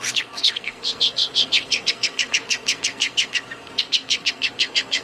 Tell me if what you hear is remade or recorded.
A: remade